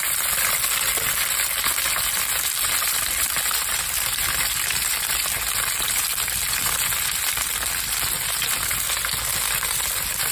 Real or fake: real